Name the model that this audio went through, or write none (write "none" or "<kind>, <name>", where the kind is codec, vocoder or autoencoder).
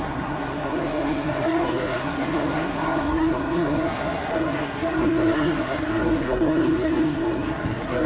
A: codec, SNAC